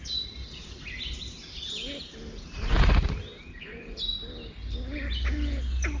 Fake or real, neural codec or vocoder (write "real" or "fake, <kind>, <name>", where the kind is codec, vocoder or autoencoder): real